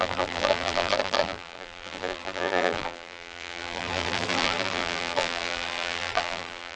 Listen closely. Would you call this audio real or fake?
fake